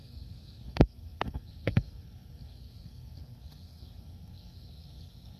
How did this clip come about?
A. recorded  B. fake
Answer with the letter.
B